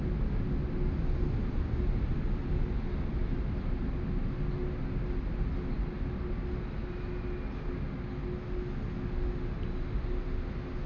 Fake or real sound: real